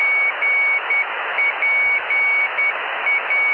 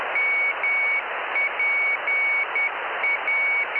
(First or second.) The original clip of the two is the second